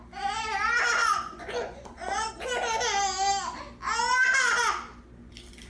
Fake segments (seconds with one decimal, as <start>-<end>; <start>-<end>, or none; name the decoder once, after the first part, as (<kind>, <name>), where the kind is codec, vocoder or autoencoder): 1.0-2.3 (vocoder, Vocos)